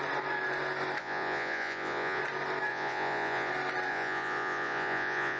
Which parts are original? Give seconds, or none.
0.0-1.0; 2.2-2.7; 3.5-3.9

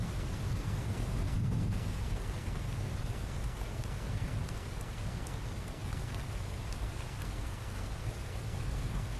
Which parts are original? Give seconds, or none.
none

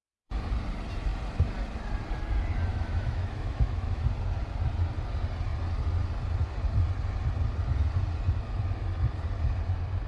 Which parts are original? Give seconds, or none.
0.0-2.7; 4.0-10.1

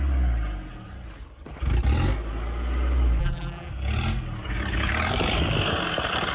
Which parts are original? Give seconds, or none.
0.0-3.2; 3.7-6.3

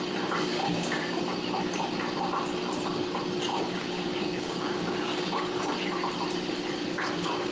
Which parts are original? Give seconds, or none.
0.0-0.6; 1.2-3.5; 5.6-6.9

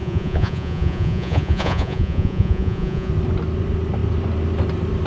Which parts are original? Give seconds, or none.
3.1-5.1

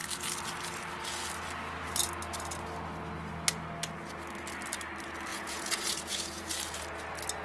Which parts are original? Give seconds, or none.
0.0-5.3; 6.5-7.4